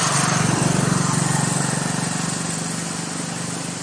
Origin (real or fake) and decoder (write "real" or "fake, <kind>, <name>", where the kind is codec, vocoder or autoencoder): real